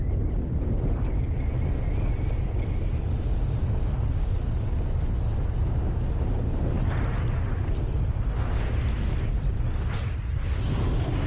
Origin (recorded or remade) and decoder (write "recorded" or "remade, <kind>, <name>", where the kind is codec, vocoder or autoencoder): recorded